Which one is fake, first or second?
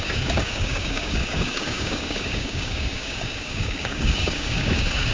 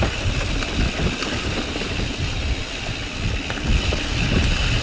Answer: first